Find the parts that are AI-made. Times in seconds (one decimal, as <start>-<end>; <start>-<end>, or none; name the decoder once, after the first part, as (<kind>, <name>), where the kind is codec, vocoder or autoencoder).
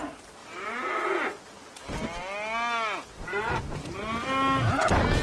0.4-1.0 (vocoder, BigVGAN v2)